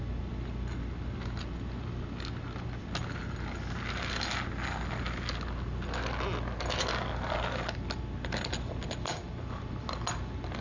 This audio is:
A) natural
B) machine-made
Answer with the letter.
A